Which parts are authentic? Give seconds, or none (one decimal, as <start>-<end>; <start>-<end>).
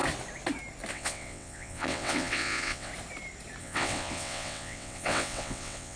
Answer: 0.0-0.9; 2.9-3.6